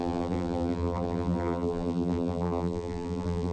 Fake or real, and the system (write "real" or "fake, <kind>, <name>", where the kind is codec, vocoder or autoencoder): fake, vocoder, BigVGAN v2